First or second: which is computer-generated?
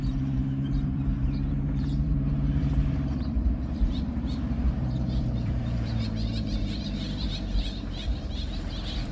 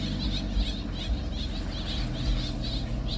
first